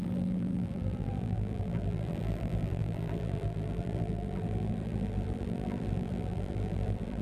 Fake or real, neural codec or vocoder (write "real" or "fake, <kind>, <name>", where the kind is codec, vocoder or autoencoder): fake, vocoder, BigVGAN v2